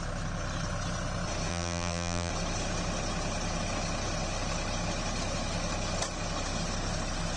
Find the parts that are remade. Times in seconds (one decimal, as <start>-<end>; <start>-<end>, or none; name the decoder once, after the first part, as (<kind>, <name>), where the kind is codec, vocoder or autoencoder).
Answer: 1.5-2.3 (vocoder, BigVGAN v2)